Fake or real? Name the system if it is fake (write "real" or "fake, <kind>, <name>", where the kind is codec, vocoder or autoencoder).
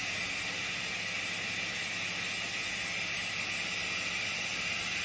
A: real